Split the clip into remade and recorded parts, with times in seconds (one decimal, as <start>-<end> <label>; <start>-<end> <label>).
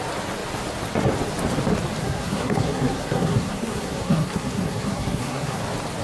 0.0-2.0 recorded; 2.0-5.6 remade; 5.6-6.0 recorded